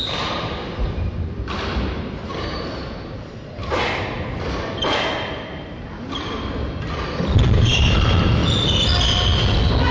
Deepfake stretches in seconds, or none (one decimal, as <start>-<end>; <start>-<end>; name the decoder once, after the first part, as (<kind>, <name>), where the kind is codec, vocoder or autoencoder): 0.0-1.1 (vocoder, BigVGAN v2); 2.0-3.6; 7.5-8.4